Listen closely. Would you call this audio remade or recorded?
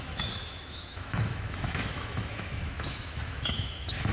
remade